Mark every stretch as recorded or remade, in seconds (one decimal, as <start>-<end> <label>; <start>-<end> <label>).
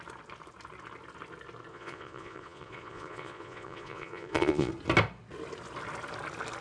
0.0-1.7 recorded; 1.7-4.7 remade; 4.7-6.6 recorded